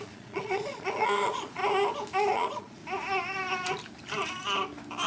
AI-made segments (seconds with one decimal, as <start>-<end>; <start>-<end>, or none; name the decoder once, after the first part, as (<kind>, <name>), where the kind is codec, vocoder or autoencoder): 0.0-1.6 (vocoder, Vocos); 2.3-2.8